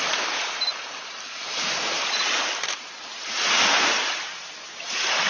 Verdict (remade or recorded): remade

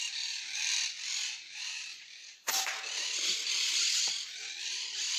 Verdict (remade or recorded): remade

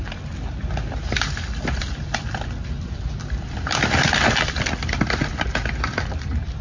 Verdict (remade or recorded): remade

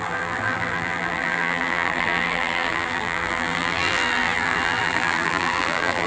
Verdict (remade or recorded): remade